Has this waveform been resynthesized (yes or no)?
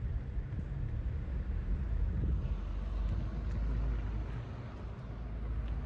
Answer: no